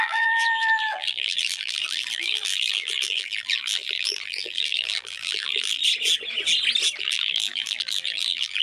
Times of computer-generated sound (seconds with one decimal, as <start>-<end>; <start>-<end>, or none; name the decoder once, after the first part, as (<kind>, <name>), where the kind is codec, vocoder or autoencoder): 0.0-5.8 (vocoder, BigVGAN v2); 7.0-8.6